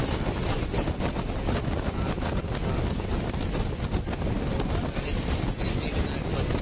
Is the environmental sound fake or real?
real